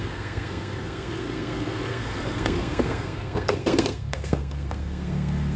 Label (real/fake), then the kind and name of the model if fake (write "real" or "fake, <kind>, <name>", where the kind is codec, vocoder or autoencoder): fake, codec, SNAC